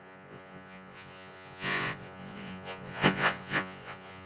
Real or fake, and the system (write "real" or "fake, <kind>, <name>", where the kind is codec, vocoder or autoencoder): fake, vocoder, Vocos